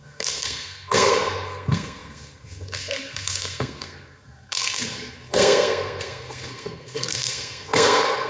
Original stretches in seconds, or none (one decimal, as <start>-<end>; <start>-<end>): none